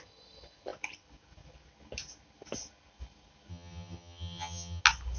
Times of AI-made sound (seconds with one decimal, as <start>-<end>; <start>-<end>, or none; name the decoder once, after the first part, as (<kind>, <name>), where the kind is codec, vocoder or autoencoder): 3.5-4.8 (vocoder, HiFi-GAN)